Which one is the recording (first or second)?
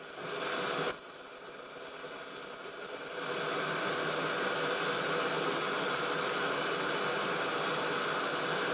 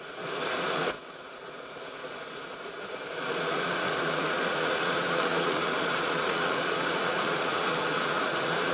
first